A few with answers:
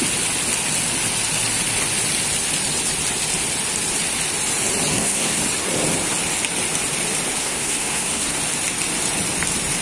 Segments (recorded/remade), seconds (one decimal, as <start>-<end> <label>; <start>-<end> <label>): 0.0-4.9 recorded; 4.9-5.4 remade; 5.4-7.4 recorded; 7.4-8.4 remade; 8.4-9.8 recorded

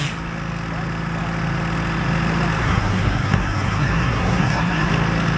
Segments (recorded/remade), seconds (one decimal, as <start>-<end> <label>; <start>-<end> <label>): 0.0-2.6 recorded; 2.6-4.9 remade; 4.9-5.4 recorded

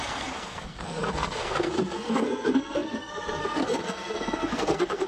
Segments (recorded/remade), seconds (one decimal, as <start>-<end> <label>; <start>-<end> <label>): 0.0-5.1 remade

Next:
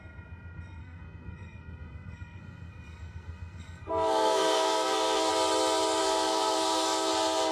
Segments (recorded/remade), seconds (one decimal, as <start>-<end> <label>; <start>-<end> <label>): 0.0-0.8 recorded; 0.8-5.3 remade; 5.3-6.0 recorded; 6.0-7.1 remade; 7.1-7.5 recorded

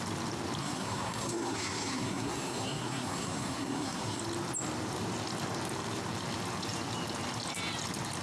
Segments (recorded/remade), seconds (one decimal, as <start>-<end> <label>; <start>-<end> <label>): 0.0-0.6 recorded; 0.6-4.2 remade; 4.2-8.2 recorded

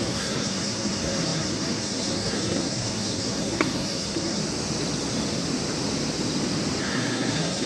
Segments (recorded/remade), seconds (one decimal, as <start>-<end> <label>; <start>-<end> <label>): 0.0-4.4 remade; 4.4-6.8 recorded; 6.8-7.7 remade

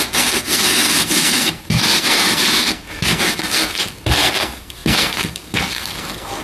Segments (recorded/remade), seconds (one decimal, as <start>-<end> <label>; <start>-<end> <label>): 0.0-6.4 remade

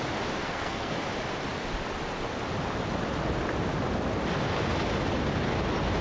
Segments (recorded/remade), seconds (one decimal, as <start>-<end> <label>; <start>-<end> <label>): 0.0-0.4 recorded; 0.4-0.9 remade; 0.9-6.0 recorded